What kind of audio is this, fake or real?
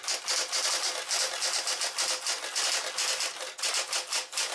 real